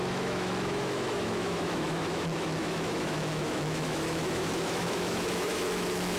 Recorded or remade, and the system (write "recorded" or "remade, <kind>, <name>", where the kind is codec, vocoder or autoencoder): remade, autoencoder, DAC-VAE